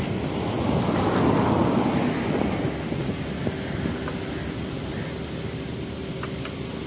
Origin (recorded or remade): recorded